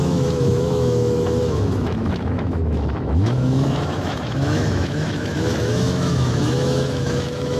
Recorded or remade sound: remade